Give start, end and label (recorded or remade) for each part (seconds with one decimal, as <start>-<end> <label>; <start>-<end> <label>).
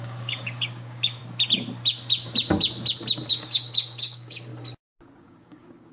0.0-1.2 remade; 1.2-3.3 recorded; 3.3-4.5 remade; 4.5-5.2 recorded; 5.2-5.9 remade